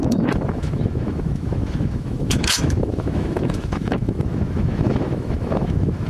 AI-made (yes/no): yes